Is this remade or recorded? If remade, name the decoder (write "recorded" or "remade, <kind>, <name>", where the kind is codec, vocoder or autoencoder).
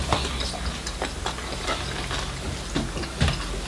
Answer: recorded